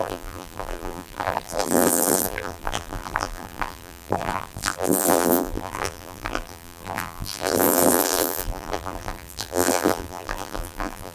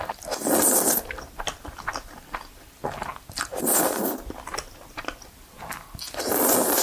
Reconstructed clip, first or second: first